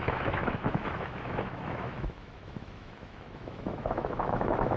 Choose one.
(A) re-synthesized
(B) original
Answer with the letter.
A